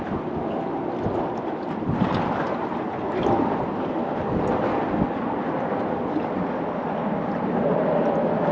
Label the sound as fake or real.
real